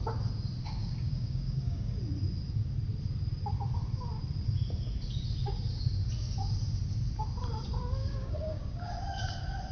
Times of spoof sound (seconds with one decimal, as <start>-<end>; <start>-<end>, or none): 0.8-2.0; 8.0-8.9